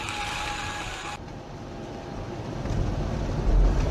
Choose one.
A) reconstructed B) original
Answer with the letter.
A